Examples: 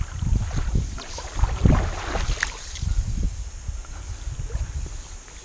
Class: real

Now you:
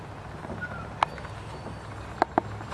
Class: real